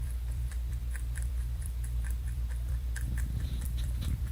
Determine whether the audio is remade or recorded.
remade